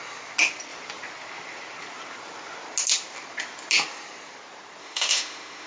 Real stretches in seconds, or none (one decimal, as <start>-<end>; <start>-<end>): 0.0-4.8